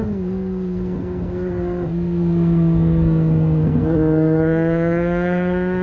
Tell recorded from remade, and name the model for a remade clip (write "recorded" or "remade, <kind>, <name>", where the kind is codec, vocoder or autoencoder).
remade, codec, SNAC